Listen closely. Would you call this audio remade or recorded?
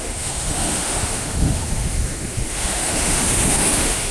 remade